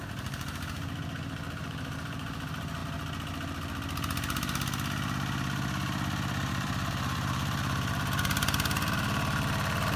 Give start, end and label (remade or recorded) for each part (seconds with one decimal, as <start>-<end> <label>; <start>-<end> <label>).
0.0-2.8 remade; 2.8-6.5 recorded; 6.5-10.0 remade